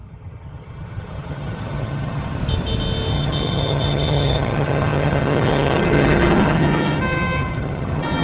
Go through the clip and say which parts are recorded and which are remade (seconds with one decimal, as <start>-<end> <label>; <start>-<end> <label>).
0.0-2.4 remade; 2.4-3.1 recorded; 3.1-8.2 remade